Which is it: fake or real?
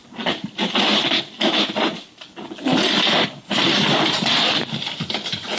real